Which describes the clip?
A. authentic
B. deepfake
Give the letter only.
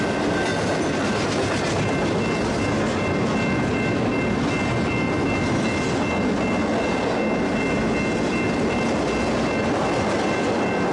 A